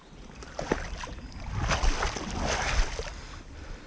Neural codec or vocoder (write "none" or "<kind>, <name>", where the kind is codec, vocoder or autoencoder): none